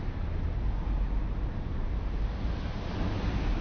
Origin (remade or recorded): recorded